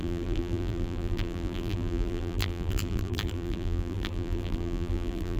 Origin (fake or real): fake